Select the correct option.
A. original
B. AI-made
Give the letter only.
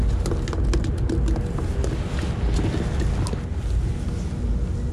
A